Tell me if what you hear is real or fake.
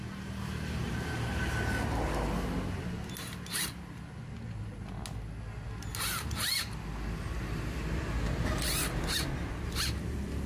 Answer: real